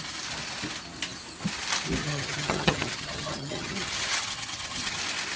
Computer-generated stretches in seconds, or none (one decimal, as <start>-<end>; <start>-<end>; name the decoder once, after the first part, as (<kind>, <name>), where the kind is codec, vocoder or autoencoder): 2.0-5.0 (vocoder, HiFi-GAN)

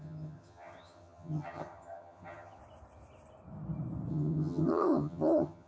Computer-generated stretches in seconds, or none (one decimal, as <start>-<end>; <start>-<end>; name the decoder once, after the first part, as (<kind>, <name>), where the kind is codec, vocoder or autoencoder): 0.0-2.6 (vocoder, HiFi-GAN); 4.1-5.7

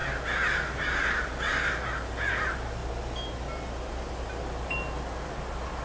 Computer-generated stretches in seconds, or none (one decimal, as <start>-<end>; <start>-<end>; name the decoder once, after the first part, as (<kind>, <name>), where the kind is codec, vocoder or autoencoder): none

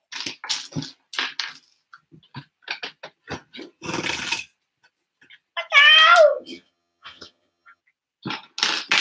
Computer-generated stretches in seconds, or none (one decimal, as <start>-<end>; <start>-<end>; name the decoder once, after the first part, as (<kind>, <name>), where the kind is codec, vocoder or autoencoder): 6.3-7.8 (vocoder, HiFi-GAN)

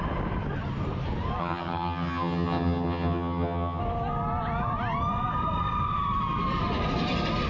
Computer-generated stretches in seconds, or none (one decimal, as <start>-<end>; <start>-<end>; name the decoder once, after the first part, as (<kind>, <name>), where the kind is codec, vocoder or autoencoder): 1.4-3.8 (vocoder, HiFi-GAN)

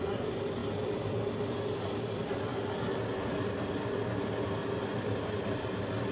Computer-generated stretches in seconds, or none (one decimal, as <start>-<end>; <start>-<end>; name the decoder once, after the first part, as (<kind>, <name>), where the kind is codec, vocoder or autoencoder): none